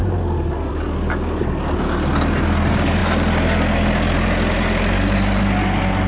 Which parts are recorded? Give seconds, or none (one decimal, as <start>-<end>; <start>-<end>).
0.0-6.1